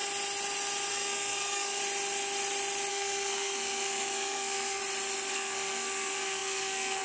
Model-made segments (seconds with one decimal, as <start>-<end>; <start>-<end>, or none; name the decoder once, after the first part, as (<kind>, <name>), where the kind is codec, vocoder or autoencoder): 0.9-1.8 (codec, SNAC); 2.9-4.8; 5.3-7.0